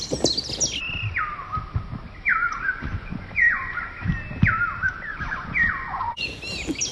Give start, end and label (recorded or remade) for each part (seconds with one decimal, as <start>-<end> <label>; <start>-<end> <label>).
0.0-2.3 recorded; 2.3-3.9 remade; 3.9-5.1 recorded; 5.1-6.4 remade; 6.4-6.9 recorded